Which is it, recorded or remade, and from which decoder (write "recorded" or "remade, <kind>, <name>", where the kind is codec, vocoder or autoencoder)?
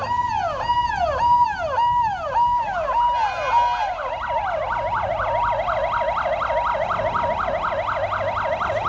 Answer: recorded